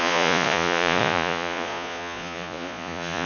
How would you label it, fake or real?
fake